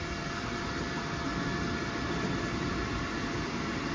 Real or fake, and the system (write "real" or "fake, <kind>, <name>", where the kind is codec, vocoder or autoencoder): fake, vocoder, BigVGAN v2